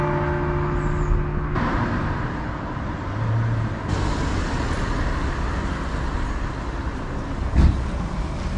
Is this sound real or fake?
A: real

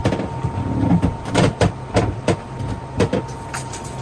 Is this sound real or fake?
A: real